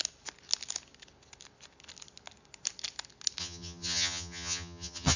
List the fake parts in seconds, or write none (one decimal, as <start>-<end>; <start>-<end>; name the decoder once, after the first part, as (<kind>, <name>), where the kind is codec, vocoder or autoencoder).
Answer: 3.4-5.2 (vocoder, HiFi-GAN)